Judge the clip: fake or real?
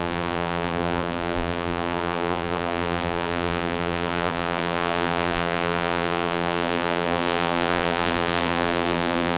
fake